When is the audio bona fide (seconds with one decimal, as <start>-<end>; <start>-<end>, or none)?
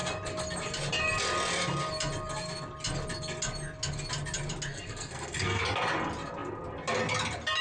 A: 0.0-4.7; 5.6-7.6